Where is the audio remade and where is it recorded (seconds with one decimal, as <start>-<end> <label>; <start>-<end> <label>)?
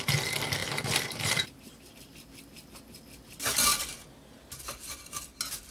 0.0-0.6 recorded; 0.6-1.9 remade; 1.9-5.7 recorded